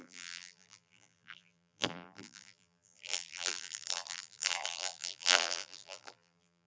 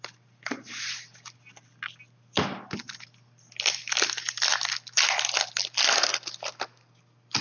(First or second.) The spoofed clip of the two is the first